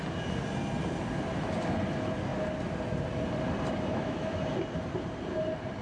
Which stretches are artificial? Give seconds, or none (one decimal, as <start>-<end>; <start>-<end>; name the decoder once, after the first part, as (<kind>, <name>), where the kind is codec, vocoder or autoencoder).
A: 3.9-4.4 (autoencoder, DAC-VAE)